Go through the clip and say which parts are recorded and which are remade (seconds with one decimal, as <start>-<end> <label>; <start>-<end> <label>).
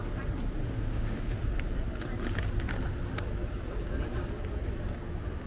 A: 0.0-0.6 recorded; 0.6-1.4 remade; 1.4-5.5 recorded